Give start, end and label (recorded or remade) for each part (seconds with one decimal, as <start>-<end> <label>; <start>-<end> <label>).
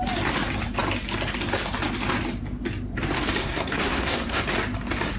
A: 0.0-3.4 recorded; 3.4-4.4 remade; 4.4-5.2 recorded